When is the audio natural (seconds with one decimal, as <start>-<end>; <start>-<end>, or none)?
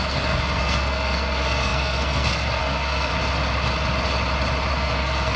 3.1-4.7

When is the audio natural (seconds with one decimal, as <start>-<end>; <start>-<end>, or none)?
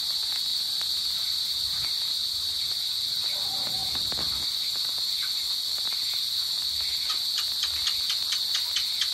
0.0-0.5; 2.6-3.8; 4.9-9.1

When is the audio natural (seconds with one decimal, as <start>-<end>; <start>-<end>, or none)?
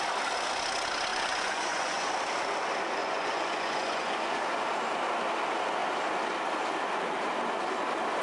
0.0-1.1; 2.1-3.0; 4.4-8.2